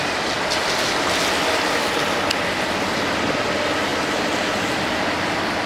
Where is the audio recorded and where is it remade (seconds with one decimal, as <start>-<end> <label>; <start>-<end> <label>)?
0.0-5.7 recorded

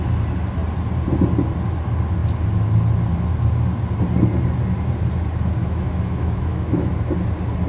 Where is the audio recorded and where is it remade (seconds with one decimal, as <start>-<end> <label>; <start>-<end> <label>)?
0.0-5.6 recorded; 5.6-6.9 remade; 6.9-7.7 recorded

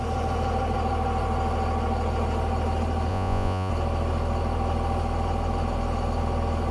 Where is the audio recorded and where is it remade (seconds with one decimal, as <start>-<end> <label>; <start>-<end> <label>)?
0.0-3.1 recorded; 3.1-3.7 remade; 3.7-6.7 recorded

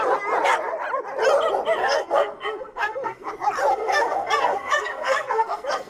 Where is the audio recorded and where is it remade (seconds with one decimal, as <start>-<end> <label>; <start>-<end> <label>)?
0.0-1.8 recorded; 1.8-3.3 remade; 3.3-3.7 recorded; 3.7-5.9 remade

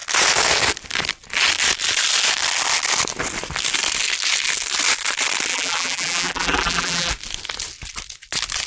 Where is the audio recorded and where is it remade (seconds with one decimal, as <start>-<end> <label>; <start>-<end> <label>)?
0.0-5.5 recorded; 5.5-7.1 remade; 7.1-8.7 recorded

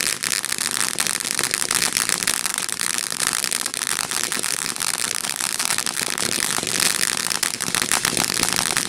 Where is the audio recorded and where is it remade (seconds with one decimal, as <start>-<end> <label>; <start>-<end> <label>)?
0.0-2.5 recorded; 2.5-3.2 remade; 3.2-3.7 recorded; 3.7-6.7 remade; 6.7-8.9 recorded

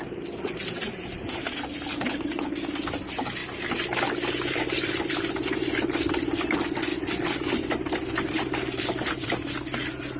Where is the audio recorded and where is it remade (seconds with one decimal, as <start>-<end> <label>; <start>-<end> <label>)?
0.0-10.2 recorded

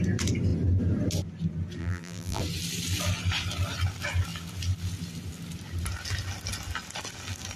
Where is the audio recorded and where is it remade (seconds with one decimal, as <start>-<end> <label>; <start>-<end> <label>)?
0.0-1.8 recorded; 1.8-2.4 remade; 2.4-7.6 recorded